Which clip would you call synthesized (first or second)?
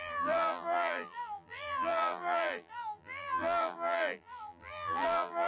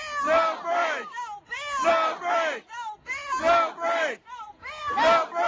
first